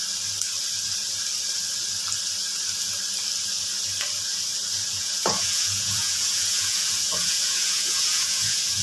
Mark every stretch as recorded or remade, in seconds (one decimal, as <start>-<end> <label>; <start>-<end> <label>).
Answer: 0.0-4.9 recorded; 4.9-8.8 remade